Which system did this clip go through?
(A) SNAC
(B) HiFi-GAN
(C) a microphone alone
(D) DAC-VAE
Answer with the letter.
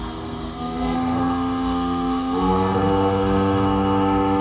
A